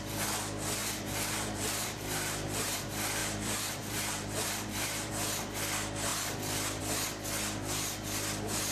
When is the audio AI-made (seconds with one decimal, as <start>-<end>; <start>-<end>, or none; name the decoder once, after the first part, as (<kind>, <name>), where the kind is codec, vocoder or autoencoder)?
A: 0.8-2.8 (vocoder, BigVGAN v2); 3.2-5.1